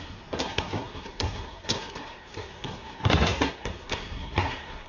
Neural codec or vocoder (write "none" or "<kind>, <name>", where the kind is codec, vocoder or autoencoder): codec, SNAC